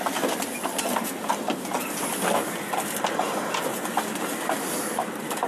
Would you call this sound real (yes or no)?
yes